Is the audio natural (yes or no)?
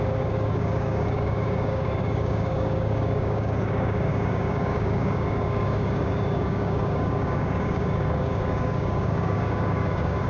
no